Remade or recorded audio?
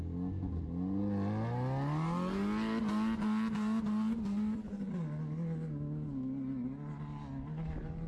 recorded